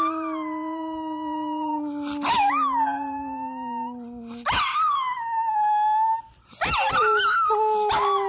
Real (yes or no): yes